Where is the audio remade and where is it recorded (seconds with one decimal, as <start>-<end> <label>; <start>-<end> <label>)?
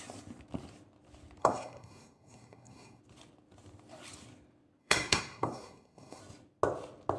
0.0-1.4 recorded; 1.4-3.0 remade; 3.0-4.8 recorded; 4.8-6.2 remade; 6.2-7.2 recorded